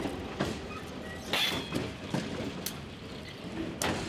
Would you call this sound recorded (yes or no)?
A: yes